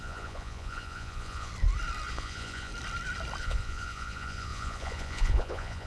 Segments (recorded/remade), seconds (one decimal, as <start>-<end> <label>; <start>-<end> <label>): 0.0-1.5 remade; 1.5-2.1 recorded; 2.1-2.7 remade; 2.7-3.4 recorded; 3.4-5.9 remade